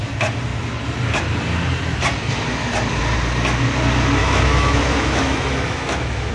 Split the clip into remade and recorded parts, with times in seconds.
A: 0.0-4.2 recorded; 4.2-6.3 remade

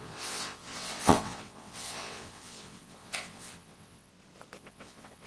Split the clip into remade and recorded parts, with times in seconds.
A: 0.0-4.1 remade; 4.1-4.6 recorded; 4.6-5.3 remade